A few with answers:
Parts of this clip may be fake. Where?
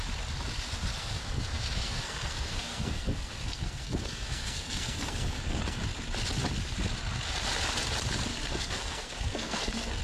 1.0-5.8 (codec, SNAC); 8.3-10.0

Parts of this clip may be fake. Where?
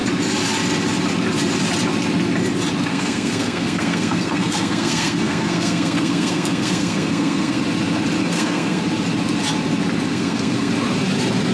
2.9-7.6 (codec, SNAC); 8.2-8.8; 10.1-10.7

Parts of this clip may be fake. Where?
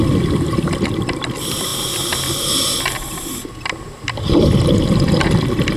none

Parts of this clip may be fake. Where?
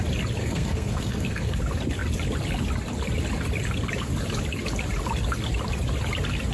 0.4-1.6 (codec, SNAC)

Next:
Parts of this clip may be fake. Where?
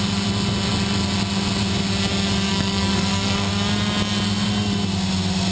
2.5-3.5 (codec, SNAC)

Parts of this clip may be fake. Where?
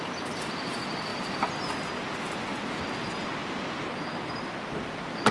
none